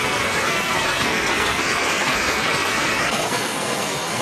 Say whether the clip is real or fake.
fake